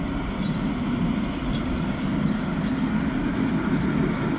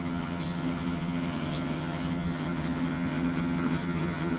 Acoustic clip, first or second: first